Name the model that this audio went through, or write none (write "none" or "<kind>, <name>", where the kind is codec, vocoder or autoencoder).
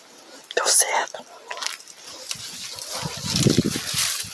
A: none